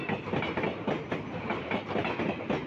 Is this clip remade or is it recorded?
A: recorded